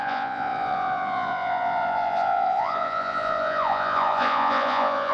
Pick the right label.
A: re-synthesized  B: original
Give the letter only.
A